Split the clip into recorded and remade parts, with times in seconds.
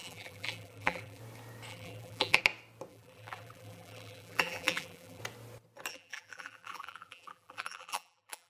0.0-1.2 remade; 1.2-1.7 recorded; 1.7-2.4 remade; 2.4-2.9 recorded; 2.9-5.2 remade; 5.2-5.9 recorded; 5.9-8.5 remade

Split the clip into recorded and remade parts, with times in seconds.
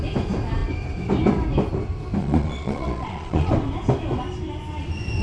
0.0-2.2 recorded; 2.2-3.5 remade; 3.5-5.2 recorded